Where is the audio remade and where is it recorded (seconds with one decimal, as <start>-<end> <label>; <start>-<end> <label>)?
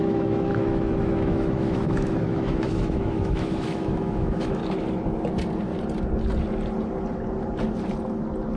0.0-4.6 remade; 4.6-8.6 recorded